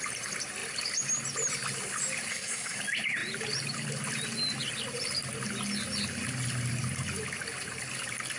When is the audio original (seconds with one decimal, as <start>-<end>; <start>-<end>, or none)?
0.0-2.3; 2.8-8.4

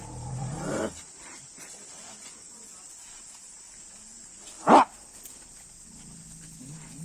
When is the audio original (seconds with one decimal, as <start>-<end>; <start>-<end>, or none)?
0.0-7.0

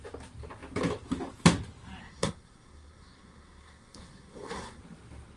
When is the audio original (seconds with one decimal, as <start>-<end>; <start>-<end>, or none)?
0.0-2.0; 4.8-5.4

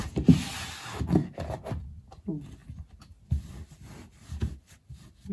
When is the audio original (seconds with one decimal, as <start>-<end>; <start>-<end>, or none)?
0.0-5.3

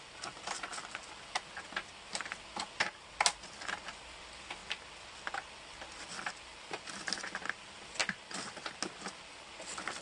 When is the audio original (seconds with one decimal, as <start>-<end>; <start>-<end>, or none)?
0.0-10.0